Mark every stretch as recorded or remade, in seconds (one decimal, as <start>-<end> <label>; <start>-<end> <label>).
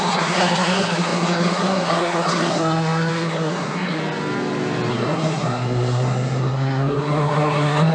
0.0-4.0 remade; 4.0-4.9 recorded; 4.9-7.9 remade